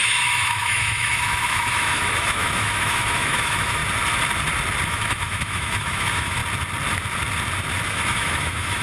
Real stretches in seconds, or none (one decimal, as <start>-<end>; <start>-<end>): 3.8-4.9; 6.4-7.9